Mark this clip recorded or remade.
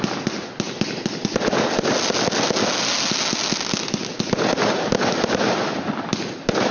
recorded